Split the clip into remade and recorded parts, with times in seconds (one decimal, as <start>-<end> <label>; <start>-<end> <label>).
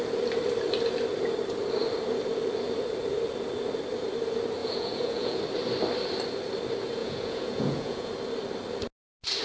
0.0-4.6 recorded; 4.6-5.4 remade; 5.4-7.0 recorded; 7.0-8.1 remade; 8.1-9.4 recorded